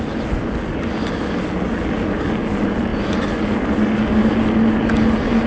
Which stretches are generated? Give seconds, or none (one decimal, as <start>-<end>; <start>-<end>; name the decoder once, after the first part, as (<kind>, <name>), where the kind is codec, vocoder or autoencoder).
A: none